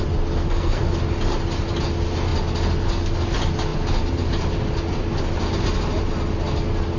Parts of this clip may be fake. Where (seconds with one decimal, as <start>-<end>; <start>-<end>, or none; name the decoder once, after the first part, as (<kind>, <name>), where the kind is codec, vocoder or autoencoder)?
0.4-1.0 (codec, SNAC)